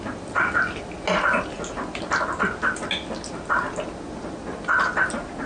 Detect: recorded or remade recorded